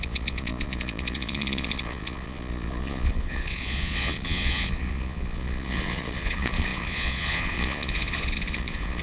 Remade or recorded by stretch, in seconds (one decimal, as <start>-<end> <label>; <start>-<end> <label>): 0.0-9.0 remade